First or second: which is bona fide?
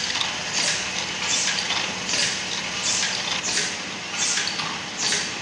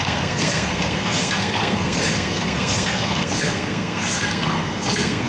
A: first